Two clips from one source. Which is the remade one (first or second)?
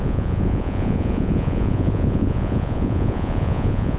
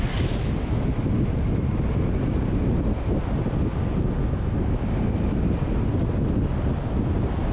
first